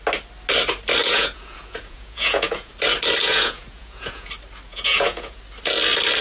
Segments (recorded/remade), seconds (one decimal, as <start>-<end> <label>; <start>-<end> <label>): 0.0-1.0 recorded; 1.0-2.7 remade; 2.7-3.2 recorded; 3.2-4.3 remade; 4.3-4.7 recorded; 4.7-5.4 remade; 5.4-6.2 recorded